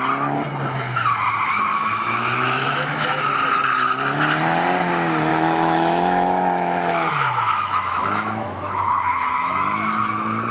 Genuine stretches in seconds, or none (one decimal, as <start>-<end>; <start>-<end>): 0.0-1.7; 3.2-5.3; 10.0-10.5

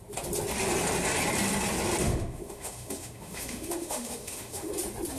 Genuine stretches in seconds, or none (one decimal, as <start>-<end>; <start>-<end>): 0.0-2.0; 4.7-5.2